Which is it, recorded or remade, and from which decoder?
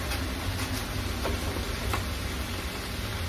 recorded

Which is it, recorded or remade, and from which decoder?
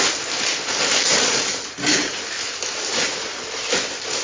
recorded